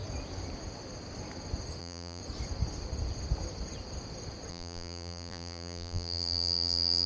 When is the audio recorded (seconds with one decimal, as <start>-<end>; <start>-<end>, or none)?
0.0-1.8; 2.2-4.5